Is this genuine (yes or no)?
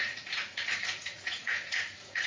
no